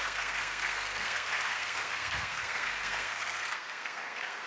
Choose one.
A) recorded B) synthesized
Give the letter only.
B